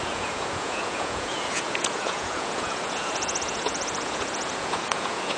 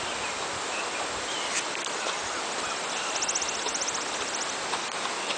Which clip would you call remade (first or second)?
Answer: first